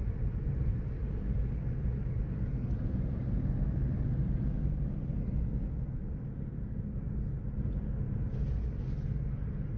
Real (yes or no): yes